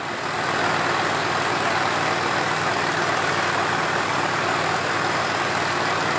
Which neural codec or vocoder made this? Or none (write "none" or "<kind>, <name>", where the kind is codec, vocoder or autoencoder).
none